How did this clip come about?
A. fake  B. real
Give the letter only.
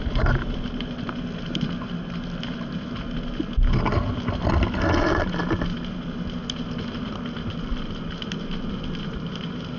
B